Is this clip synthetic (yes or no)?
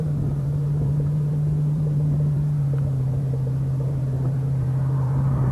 yes